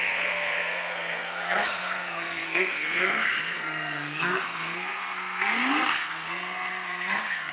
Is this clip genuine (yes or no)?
no